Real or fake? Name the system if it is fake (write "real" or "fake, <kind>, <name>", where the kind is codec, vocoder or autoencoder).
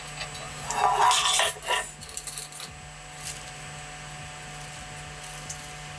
real